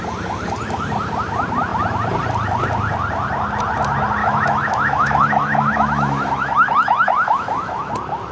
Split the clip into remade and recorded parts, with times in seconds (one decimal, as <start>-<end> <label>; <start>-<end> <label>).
0.0-4.2 recorded; 4.2-7.9 remade; 7.9-8.3 recorded